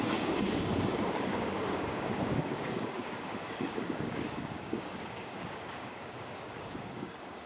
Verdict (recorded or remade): remade